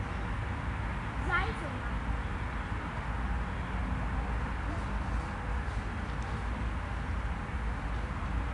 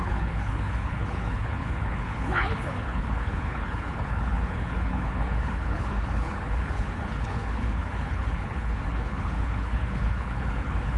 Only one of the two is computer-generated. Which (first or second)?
second